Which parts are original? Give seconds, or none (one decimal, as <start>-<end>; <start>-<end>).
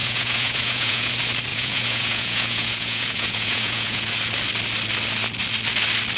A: 1.1-1.5; 4.1-6.2